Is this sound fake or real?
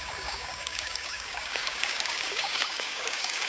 fake